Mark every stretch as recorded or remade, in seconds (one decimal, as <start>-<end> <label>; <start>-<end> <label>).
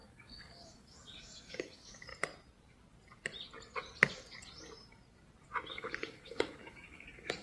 0.0-2.1 remade; 2.1-5.7 recorded; 5.7-7.4 remade